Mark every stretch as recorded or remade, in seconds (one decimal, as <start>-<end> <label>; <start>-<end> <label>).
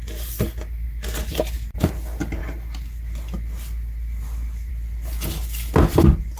0.0-6.4 recorded